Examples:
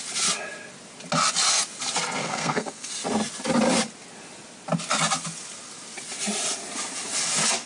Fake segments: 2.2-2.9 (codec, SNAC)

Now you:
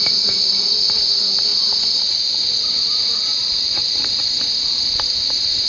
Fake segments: 1.5-4.1 (vocoder, BigVGAN v2)

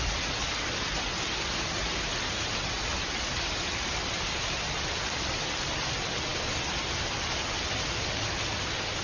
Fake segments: none